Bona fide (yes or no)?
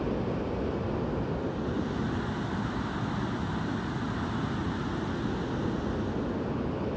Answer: yes